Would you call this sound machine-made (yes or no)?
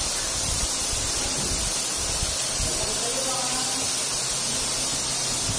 no